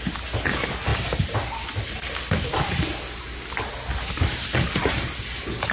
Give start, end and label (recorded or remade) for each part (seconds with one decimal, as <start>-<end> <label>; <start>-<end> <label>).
0.0-5.7 recorded